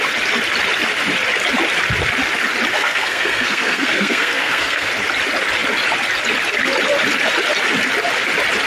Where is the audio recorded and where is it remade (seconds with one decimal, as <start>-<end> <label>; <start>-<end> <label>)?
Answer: 0.0-2.7 recorded; 2.7-4.9 remade; 4.9-8.7 recorded